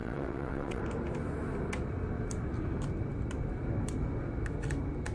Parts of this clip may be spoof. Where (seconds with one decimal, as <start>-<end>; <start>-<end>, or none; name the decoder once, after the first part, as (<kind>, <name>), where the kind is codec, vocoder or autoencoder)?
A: 0.0-0.8 (vocoder, WaveNeXt)